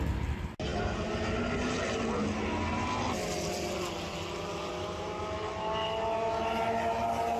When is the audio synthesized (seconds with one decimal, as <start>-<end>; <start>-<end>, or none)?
none